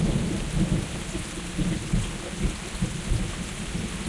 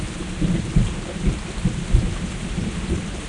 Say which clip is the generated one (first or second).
second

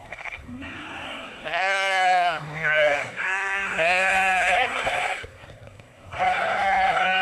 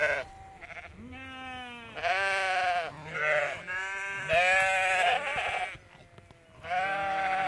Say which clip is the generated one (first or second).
first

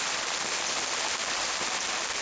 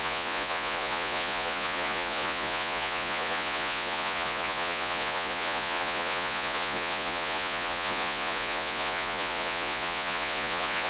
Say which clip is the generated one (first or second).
second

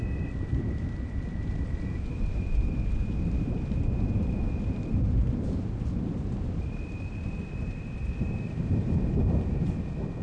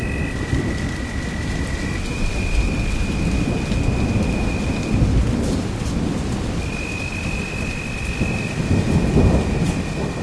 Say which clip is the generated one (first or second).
first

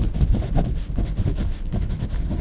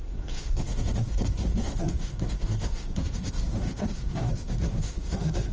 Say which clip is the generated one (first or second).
second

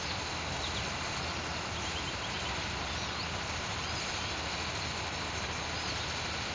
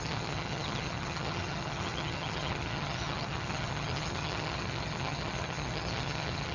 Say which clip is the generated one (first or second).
second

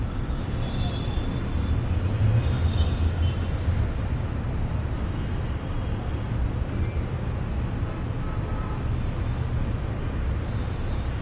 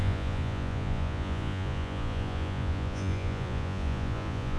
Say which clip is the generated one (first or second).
second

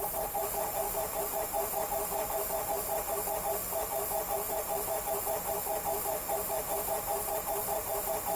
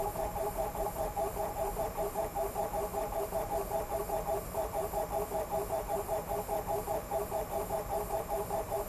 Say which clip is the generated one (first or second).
second